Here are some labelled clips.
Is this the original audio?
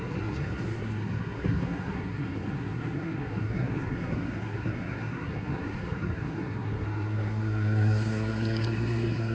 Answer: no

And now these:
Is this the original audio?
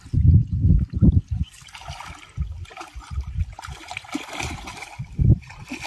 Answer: yes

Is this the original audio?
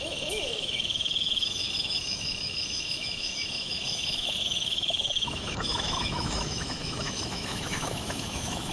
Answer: no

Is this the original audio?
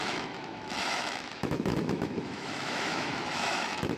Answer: no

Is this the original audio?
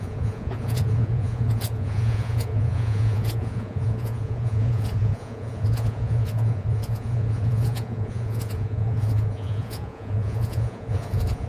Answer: no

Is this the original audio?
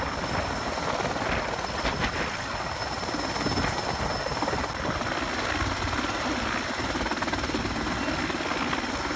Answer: yes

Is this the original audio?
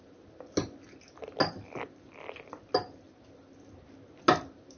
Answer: yes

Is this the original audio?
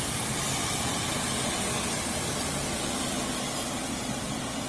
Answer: yes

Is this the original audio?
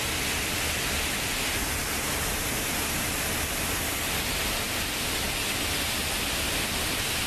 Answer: yes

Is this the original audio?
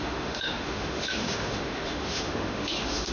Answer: no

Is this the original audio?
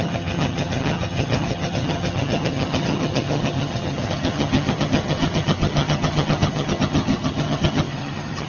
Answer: no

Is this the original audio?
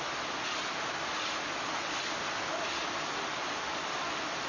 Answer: yes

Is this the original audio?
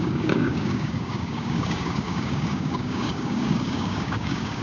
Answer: no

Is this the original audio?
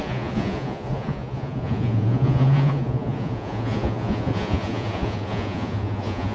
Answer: no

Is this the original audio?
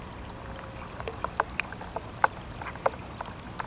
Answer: no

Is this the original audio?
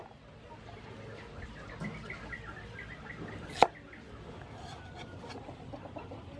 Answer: yes